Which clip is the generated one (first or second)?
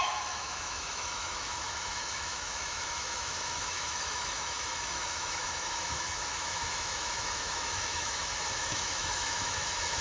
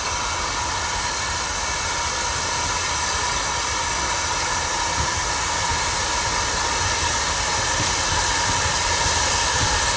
first